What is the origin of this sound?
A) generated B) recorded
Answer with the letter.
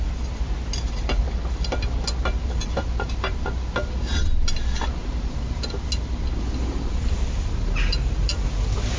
B